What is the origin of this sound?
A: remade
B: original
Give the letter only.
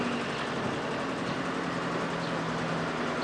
B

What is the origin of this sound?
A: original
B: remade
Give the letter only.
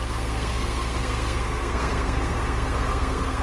B